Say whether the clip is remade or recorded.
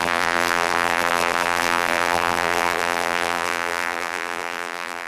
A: remade